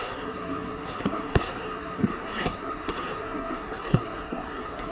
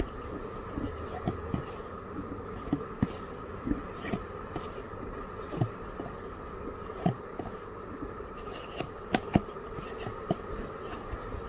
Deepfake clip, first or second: first